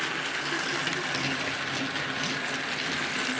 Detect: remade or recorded recorded